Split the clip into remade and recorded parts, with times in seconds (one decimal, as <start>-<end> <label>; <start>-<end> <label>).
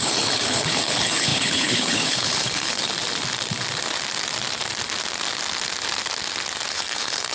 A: 0.0-2.9 remade; 2.9-6.7 recorded; 6.7-7.3 remade